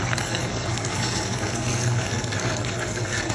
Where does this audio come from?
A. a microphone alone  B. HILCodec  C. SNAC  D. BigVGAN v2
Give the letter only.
C